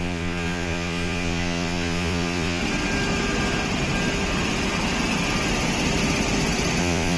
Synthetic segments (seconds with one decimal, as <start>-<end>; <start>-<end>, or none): 0.0-2.6; 6.8-7.2